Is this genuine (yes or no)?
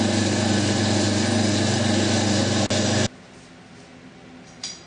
yes